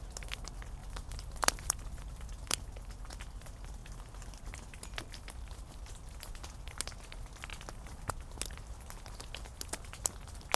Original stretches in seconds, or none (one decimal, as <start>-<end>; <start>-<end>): 0.0-0.8; 2.3-10.6